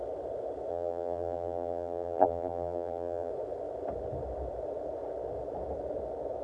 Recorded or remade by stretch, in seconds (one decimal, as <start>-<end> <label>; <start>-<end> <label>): 0.0-0.7 recorded; 0.7-3.3 remade; 3.3-6.4 recorded